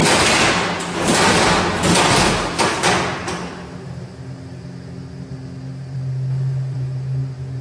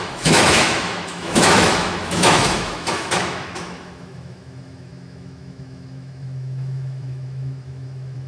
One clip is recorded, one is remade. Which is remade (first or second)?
second